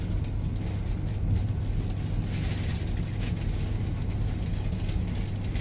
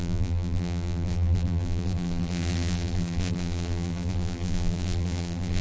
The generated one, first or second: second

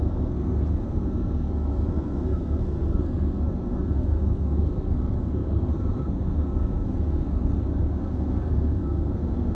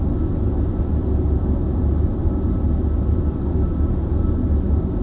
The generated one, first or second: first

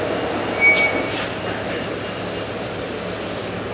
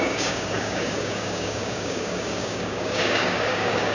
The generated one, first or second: second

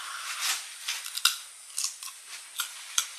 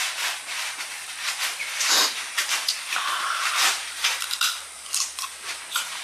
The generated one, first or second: second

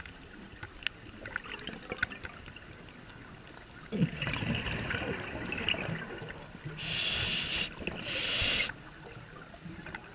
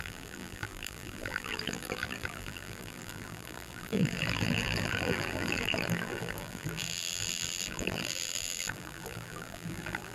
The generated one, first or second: second